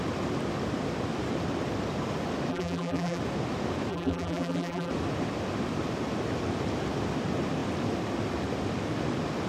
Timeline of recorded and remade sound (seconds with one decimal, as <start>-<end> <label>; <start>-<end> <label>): 0.0-2.5 recorded; 2.5-3.2 remade; 3.2-3.9 recorded; 3.9-4.9 remade; 4.9-9.5 recorded